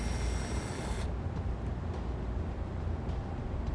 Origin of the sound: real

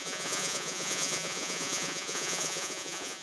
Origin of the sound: fake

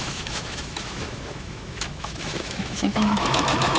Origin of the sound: fake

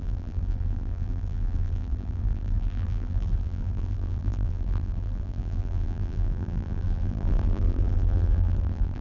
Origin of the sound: fake